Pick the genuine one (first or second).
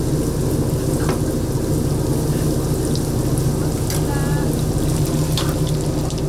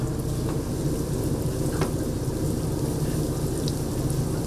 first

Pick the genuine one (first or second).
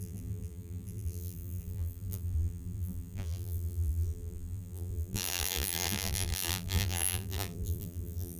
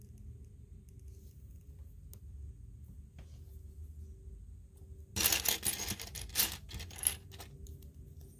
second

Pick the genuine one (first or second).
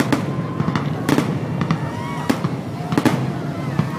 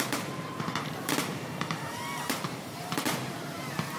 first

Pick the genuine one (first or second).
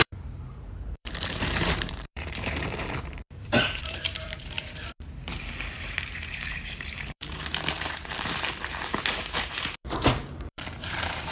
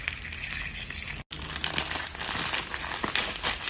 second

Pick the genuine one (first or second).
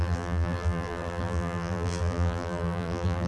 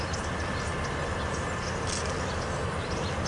second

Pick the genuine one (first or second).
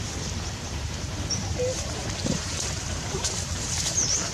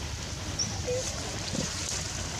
second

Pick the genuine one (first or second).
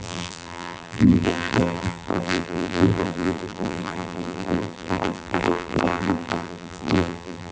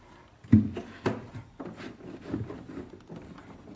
second